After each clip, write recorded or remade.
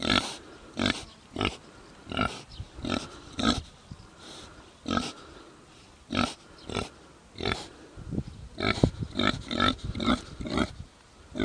recorded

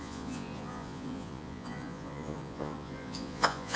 remade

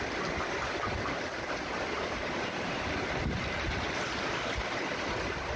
recorded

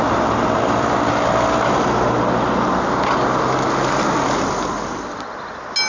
recorded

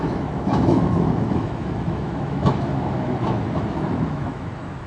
remade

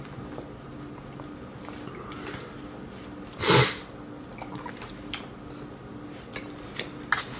recorded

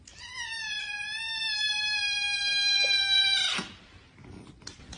recorded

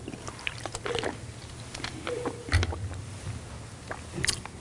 recorded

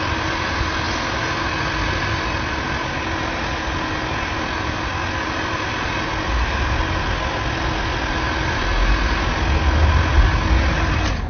recorded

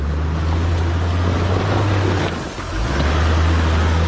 recorded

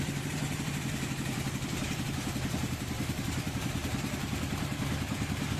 remade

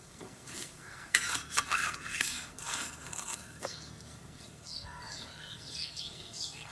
remade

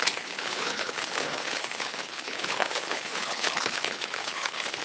remade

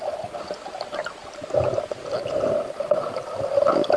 recorded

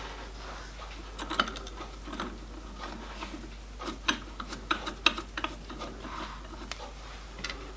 recorded